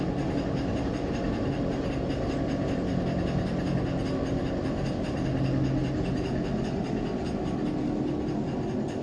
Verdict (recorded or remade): recorded